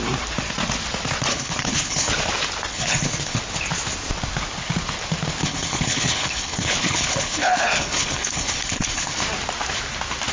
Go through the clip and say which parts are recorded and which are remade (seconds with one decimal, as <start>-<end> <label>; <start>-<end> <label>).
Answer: 0.0-1.3 recorded; 1.3-2.1 remade; 2.1-2.7 recorded; 2.7-3.4 remade; 3.4-5.4 recorded; 5.4-9.2 remade; 9.2-10.3 recorded